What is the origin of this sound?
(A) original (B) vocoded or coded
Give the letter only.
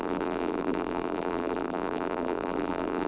B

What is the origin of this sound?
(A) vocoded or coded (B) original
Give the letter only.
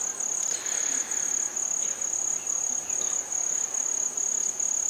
B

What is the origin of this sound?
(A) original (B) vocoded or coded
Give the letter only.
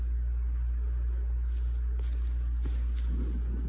A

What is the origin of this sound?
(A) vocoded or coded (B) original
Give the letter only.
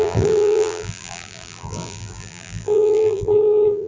A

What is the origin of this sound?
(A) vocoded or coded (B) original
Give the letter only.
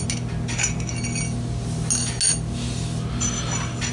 B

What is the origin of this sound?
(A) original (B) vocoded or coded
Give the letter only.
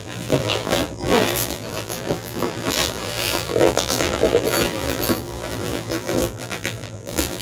B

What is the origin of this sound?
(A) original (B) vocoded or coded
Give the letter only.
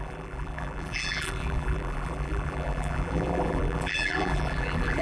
B